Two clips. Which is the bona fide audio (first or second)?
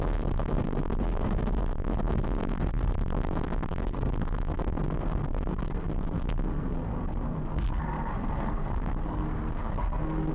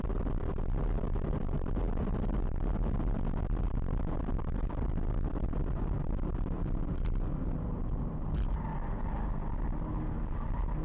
second